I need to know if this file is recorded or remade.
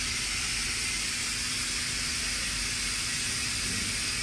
recorded